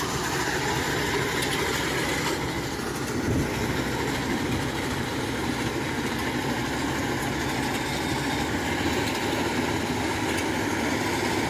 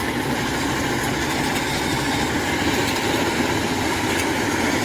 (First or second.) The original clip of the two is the first